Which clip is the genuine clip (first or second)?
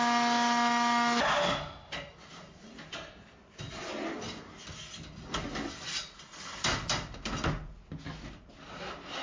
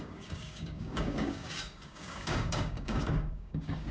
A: first